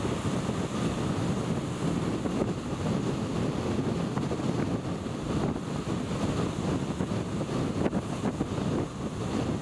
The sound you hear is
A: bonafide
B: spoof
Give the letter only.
A